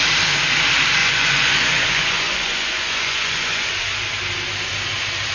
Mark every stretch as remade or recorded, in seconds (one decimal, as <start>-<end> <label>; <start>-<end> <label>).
0.0-1.0 recorded; 1.0-3.7 remade; 3.7-5.3 recorded